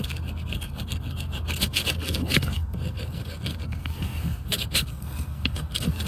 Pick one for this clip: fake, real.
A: fake